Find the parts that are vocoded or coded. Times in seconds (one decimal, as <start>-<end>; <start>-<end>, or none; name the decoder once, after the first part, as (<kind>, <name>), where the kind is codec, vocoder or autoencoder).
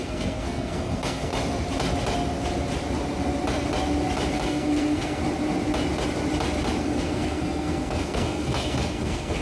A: 0.0-1.3 (codec, SNAC); 4.3-5.2; 6.8-9.4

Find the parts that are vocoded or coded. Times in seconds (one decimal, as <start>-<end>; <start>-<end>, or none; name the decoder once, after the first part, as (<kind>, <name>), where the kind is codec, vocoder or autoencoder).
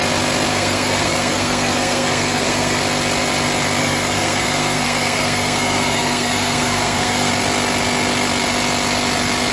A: 0.5-2.8 (codec, SNAC); 3.8-7.3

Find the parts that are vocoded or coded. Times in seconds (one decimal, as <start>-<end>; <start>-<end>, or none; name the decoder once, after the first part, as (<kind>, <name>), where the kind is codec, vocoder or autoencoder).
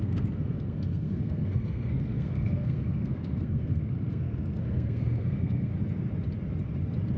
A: 0.0-5.7 (codec, SNAC)